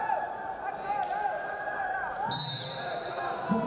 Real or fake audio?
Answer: real